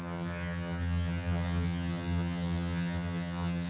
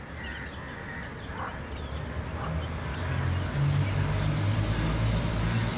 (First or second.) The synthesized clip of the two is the first